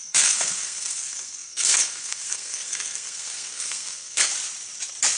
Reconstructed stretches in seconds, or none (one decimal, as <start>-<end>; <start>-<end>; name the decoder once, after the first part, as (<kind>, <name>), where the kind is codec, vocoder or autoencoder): 0.0-4.3 (codec, SNAC)